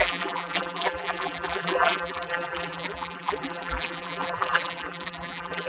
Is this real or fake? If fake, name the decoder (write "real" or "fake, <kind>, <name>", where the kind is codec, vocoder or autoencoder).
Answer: fake, vocoder, BigVGAN v2